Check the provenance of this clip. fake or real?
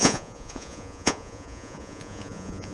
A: fake